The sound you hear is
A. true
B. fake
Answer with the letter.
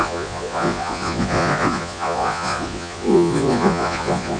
B